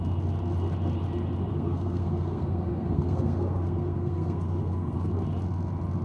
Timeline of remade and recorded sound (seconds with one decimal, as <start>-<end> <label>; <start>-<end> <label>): 0.0-1.5 recorded; 1.5-5.1 remade; 5.1-6.0 recorded

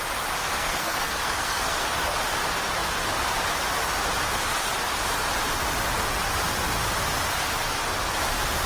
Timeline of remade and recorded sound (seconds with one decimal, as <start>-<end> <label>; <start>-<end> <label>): 0.0-0.4 recorded; 0.4-1.9 remade; 1.9-8.7 recorded

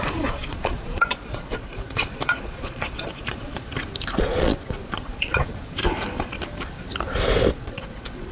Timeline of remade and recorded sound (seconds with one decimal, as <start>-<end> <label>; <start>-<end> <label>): 0.0-3.7 remade; 3.7-4.2 recorded; 4.2-5.8 remade; 5.8-7.5 recorded; 7.5-8.3 remade

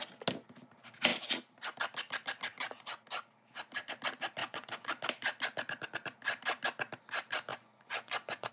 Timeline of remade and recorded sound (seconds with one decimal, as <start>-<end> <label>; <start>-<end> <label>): 0.0-4.4 recorded; 4.4-4.9 remade; 4.9-7.5 recorded; 7.5-8.5 remade

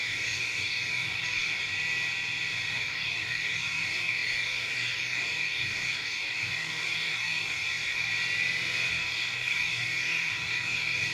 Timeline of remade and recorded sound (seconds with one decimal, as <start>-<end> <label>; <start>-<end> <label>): 0.0-1.6 remade; 1.6-2.7 recorded; 2.7-8.1 remade; 8.1-8.9 recorded; 8.9-11.1 remade